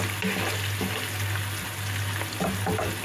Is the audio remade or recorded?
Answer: recorded